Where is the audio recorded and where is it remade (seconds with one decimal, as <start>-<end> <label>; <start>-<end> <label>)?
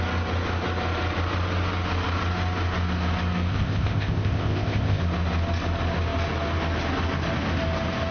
0.0-3.5 recorded; 3.5-5.0 remade; 5.0-8.1 recorded